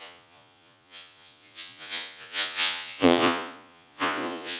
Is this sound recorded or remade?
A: remade